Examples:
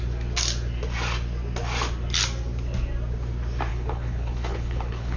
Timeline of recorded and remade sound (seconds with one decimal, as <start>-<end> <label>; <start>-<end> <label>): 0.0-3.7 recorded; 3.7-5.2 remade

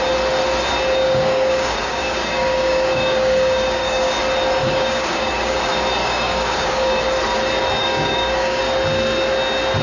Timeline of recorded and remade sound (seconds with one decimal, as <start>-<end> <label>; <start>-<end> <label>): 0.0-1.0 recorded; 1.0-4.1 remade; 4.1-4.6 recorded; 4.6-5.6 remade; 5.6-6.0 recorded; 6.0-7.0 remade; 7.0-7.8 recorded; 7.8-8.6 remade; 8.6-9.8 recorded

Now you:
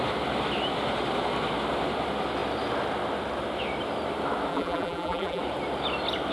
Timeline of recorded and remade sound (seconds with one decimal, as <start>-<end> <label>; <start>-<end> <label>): 0.0-4.5 recorded; 4.5-5.4 remade; 5.4-6.3 recorded